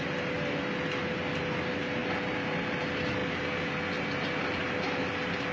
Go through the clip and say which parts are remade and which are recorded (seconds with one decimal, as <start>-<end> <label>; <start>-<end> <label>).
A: 0.0-5.5 recorded